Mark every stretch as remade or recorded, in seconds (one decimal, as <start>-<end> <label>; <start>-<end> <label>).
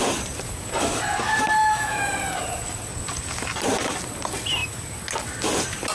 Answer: 0.0-1.6 recorded; 1.6-2.1 remade; 2.1-5.9 recorded